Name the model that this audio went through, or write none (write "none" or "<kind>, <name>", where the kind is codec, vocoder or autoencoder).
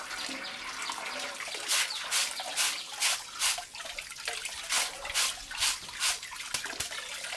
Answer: none